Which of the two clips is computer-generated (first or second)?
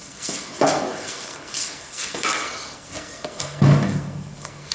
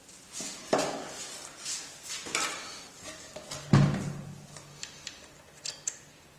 first